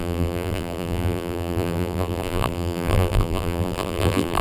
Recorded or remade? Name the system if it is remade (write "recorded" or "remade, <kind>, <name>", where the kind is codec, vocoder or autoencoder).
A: remade, vocoder, BigVGAN v2